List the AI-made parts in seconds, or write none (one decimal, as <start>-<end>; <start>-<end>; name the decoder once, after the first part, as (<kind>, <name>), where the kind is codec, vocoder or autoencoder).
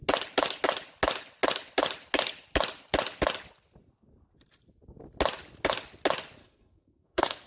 6.4-7.5 (codec, SNAC)